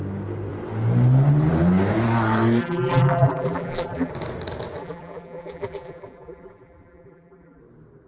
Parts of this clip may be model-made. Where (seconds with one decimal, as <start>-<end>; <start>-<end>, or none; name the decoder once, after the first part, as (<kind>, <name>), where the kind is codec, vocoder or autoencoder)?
2.6-4.1 (vocoder, BigVGAN v2); 4.8-7.6